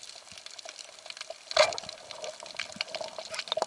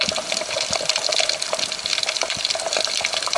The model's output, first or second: second